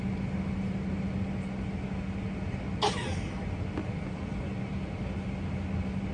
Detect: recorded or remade recorded